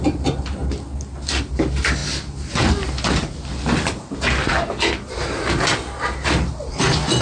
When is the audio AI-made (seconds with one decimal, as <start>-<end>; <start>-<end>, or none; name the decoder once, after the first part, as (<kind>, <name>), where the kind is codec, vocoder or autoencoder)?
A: none